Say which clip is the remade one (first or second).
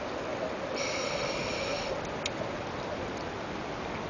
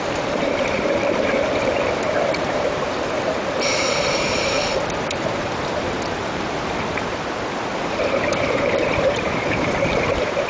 second